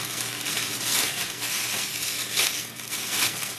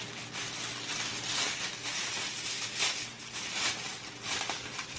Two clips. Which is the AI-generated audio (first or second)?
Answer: first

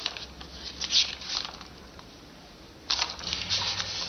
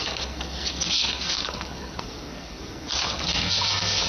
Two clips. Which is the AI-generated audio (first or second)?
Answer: second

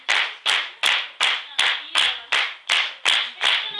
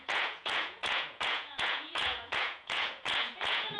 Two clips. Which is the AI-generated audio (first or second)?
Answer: second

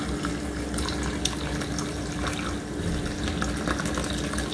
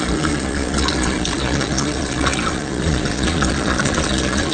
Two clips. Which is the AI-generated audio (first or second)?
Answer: second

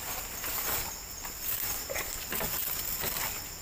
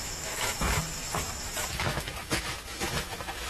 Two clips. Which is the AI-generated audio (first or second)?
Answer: second